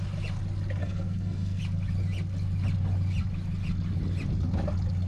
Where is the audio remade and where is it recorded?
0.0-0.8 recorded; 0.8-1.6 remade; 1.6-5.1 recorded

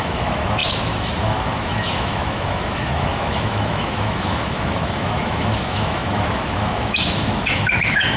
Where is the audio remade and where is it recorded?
0.0-8.2 remade

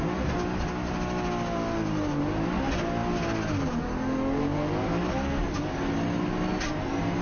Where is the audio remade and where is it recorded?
0.0-7.2 recorded